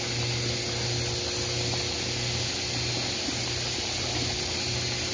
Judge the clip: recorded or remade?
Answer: recorded